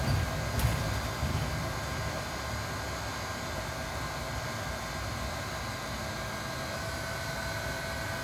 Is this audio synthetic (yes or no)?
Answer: no